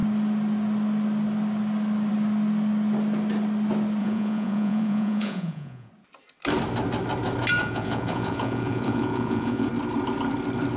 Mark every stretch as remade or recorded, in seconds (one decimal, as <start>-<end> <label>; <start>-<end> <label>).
0.0-4.0 recorded; 4.0-5.9 remade; 5.9-7.6 recorded; 7.6-9.7 remade; 9.7-10.8 recorded